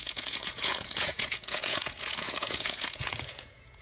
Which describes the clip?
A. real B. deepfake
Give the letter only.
B